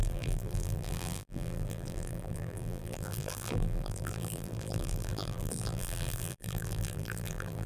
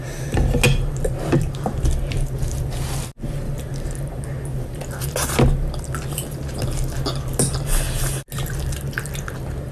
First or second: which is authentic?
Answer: second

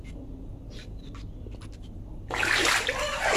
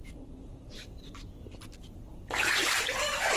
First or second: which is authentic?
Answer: first